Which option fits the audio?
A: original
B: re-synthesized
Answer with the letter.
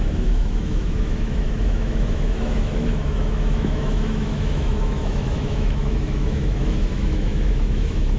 B